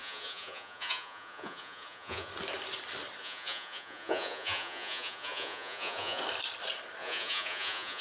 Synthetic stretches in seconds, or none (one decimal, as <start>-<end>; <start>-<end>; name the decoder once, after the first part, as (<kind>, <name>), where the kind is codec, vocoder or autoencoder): 0.0-2.3 (vocoder, Vocos); 3.2-6.2; 7.0-8.0